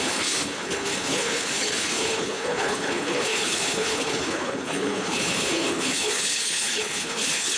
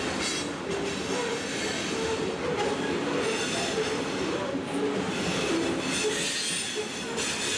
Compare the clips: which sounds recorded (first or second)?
second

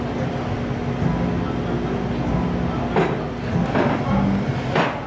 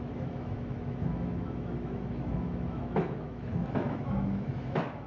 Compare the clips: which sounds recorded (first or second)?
first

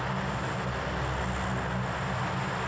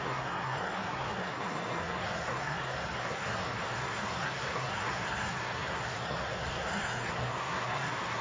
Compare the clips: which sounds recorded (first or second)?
first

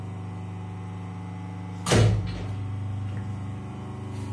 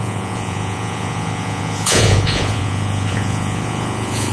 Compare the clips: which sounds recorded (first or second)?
first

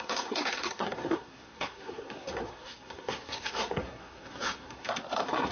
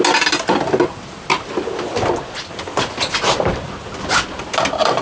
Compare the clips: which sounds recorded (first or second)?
second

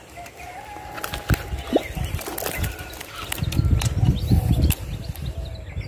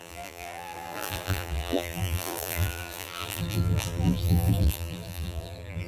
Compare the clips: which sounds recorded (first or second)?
first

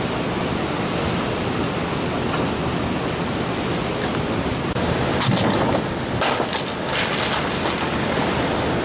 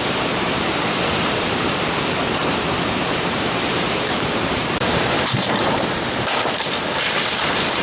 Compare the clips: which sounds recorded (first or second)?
first